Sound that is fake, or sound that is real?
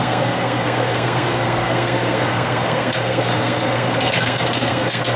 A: fake